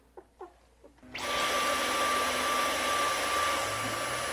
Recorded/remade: recorded